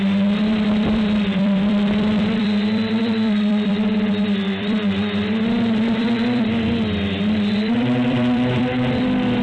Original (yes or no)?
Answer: no